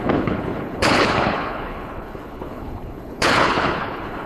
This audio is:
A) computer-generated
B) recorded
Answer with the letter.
A